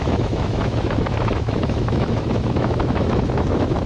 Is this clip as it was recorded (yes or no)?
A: no